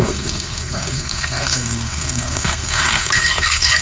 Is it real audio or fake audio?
fake